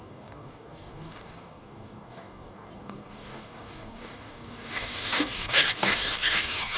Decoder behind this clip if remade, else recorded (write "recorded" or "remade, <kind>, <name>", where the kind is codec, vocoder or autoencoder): remade, codec, DAC